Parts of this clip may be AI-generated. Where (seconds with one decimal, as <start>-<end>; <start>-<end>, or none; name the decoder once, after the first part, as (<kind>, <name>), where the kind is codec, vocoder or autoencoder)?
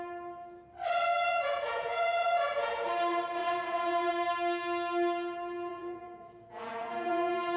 1.1-2.9 (vocoder, Vocos); 3.4-4.1; 5.7-7.6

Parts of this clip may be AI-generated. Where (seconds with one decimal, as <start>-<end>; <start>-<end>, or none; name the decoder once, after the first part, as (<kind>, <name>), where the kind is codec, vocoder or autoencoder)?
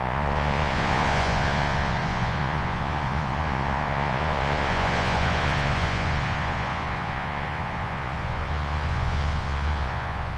0.0-10.4 (vocoder, Vocos)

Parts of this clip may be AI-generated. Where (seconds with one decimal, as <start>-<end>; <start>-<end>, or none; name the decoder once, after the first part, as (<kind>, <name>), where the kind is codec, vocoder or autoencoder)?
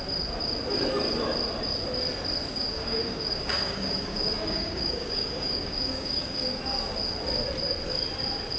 2.5-6.6 (codec, DAC)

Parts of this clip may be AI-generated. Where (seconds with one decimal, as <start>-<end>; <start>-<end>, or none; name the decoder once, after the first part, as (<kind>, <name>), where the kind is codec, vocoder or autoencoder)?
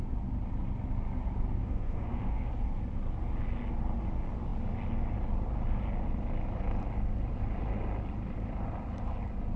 1.6-2.5 (autoencoder, DAC-VAE)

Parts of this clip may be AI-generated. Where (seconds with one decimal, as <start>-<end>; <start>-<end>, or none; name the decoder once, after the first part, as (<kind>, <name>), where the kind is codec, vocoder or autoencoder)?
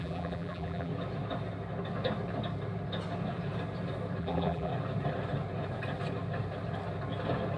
0.0-0.9 (vocoder, BigVGAN v2); 4.2-4.7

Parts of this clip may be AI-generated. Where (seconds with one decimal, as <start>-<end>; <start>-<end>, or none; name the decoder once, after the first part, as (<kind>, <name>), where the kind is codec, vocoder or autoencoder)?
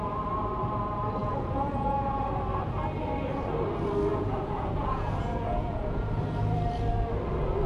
1.2-2.3 (vocoder, Vocos); 4.1-6.4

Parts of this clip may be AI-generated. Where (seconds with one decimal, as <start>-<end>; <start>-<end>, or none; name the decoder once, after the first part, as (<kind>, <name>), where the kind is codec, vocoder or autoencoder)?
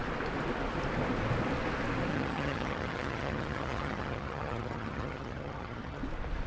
2.1-6.0 (vocoder, HiFi-GAN)